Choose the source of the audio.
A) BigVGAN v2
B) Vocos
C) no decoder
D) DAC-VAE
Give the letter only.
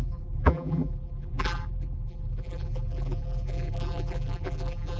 A